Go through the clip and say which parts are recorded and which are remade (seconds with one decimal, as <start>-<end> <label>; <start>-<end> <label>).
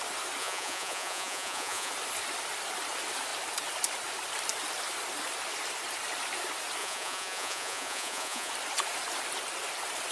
0.0-0.4 recorded; 0.4-1.9 remade; 1.9-6.8 recorded; 6.8-8.5 remade; 8.5-10.1 recorded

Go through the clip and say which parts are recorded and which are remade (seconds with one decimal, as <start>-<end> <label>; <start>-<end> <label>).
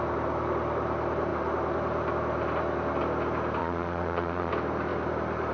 0.0-3.6 recorded; 3.6-4.5 remade; 4.5-5.5 recorded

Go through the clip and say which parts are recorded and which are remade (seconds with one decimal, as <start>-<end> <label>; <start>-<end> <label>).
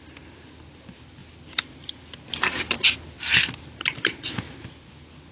0.0-5.3 recorded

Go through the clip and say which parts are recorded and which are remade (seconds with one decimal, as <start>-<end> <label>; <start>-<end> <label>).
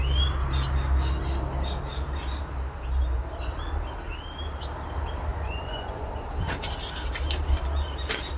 0.0-5.3 recorded; 5.3-6.1 remade; 6.1-8.4 recorded